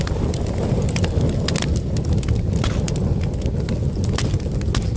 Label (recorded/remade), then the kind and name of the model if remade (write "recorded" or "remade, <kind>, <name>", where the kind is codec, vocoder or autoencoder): recorded